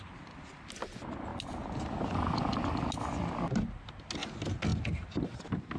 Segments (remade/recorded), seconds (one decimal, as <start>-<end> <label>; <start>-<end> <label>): 0.0-5.8 recorded